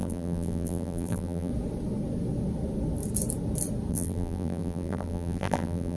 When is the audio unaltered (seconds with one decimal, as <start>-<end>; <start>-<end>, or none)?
1.5-3.9